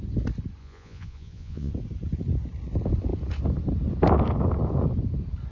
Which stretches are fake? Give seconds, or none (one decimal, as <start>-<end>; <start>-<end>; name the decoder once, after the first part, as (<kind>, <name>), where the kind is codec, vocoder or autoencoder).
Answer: 0.6-1.7 (vocoder, Vocos)